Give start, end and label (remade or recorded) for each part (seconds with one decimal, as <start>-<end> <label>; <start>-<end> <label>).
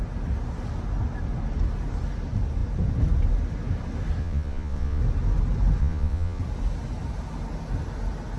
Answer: 0.0-4.2 recorded; 4.2-5.0 remade; 5.0-5.8 recorded; 5.8-6.4 remade; 6.4-8.4 recorded